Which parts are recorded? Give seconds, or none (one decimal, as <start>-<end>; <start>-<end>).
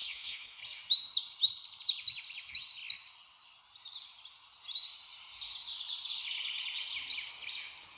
0.6-8.0